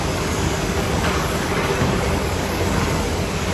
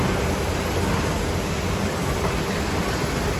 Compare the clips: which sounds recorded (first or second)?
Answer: second